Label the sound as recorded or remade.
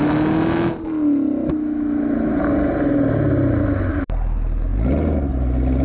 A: recorded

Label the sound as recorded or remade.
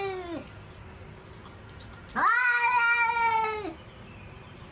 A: recorded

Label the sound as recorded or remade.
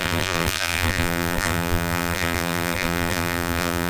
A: remade